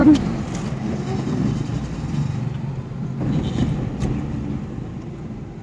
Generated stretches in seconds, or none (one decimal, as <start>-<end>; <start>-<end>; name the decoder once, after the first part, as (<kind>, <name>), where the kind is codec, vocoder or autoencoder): none